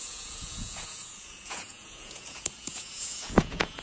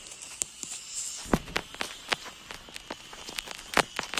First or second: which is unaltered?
second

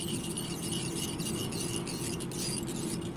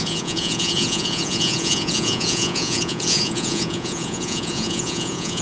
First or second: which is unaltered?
first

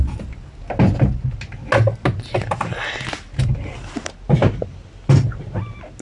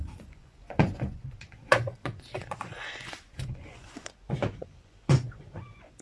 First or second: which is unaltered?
first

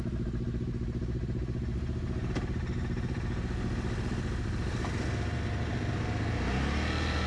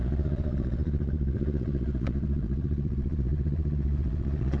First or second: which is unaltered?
first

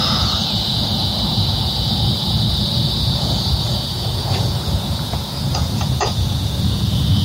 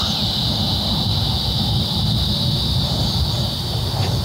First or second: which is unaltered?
second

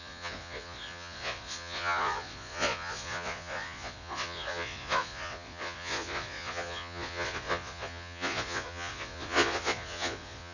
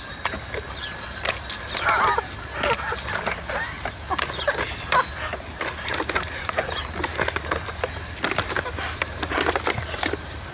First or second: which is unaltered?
second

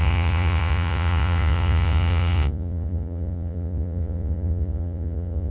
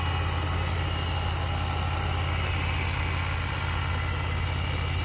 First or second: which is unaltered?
second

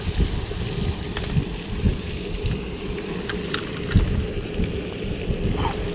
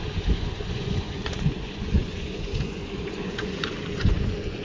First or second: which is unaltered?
first